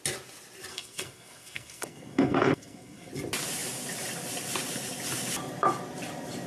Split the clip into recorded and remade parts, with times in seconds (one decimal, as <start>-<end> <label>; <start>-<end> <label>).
0.0-0.7 recorded; 0.7-3.1 remade; 3.1-6.5 recorded